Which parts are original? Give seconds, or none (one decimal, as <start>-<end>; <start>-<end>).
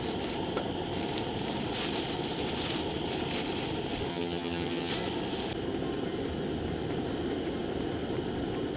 0.0-4.1; 4.9-8.8